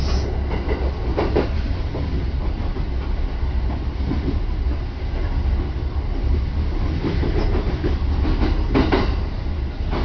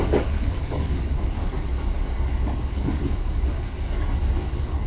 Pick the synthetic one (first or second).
second